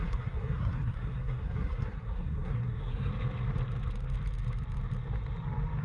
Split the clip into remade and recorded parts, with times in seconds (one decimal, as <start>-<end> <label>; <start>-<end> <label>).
0.0-3.1 remade; 3.1-5.8 recorded